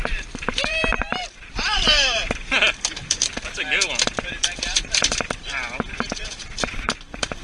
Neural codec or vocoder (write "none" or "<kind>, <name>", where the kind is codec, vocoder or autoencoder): vocoder, BigVGAN v2